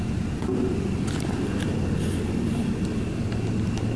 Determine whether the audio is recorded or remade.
recorded